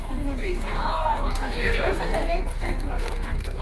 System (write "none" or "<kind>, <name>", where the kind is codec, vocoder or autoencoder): codec, DAC